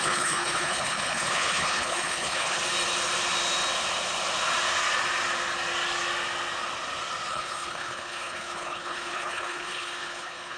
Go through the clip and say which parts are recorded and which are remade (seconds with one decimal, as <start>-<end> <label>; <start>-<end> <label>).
0.0-2.6 remade; 2.6-7.3 recorded; 7.3-10.6 remade